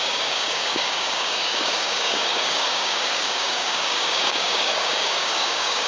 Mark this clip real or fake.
fake